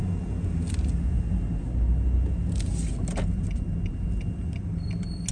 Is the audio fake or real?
real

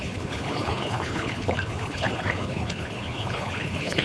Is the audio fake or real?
fake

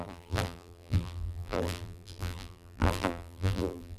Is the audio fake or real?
fake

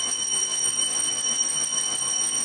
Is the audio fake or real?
fake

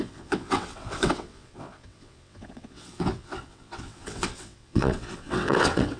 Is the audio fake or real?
fake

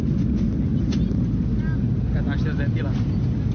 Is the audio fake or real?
real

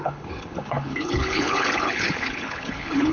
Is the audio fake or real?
fake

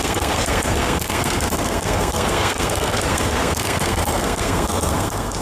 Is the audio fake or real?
fake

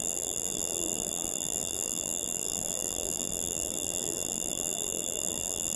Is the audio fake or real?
fake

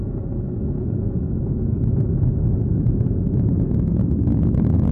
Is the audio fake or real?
fake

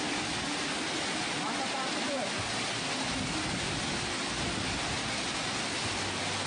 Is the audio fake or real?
real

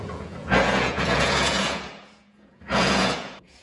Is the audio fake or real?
fake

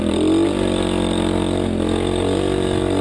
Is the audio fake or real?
real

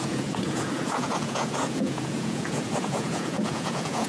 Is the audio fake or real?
fake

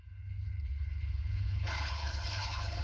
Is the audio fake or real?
fake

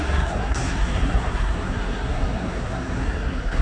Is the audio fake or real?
fake